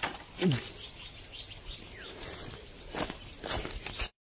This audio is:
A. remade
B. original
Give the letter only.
B